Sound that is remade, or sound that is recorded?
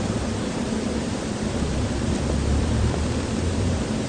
remade